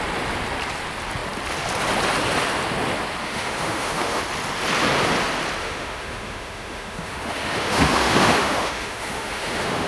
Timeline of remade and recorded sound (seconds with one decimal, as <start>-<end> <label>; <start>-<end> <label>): 0.0-3.2 recorded; 3.2-4.2 remade; 4.2-5.6 recorded; 5.6-9.9 remade